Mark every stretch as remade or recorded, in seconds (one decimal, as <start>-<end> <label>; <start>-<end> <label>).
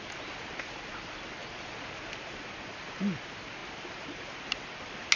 0.0-5.2 recorded